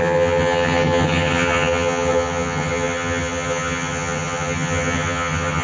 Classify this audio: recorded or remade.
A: remade